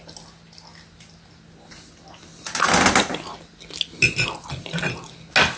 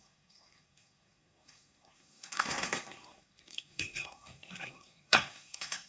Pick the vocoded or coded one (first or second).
second